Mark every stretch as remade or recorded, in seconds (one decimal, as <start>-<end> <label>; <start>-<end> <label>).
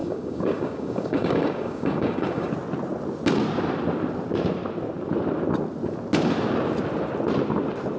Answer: 0.0-2.5 remade; 2.5-8.0 recorded